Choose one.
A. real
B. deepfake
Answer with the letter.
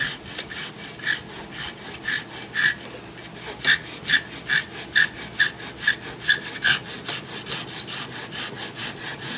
A